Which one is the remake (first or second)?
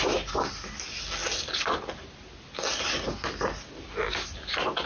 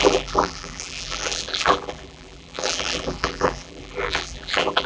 second